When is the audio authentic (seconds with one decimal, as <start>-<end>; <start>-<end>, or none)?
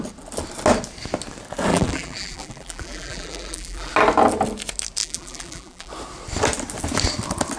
0.0-1.7; 3.9-5.0; 5.9-7.6